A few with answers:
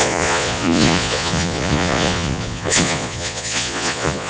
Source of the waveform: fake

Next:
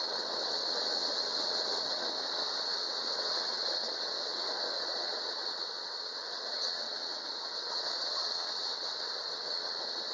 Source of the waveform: fake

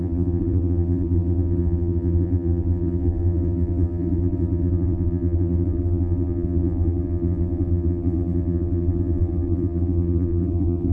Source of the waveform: fake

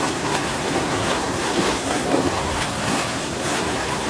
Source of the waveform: fake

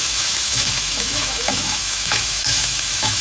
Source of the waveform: fake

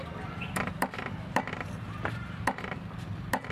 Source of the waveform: real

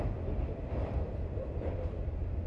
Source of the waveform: fake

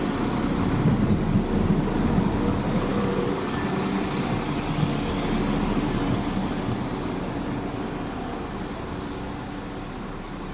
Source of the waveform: real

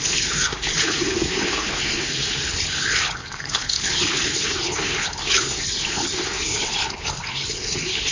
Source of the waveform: fake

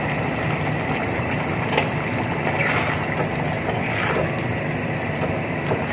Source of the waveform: real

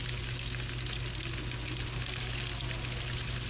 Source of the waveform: real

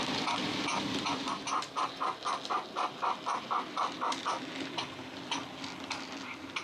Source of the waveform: real